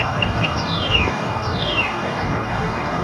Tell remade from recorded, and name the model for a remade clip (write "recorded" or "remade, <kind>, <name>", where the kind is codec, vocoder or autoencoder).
remade, codec, DAC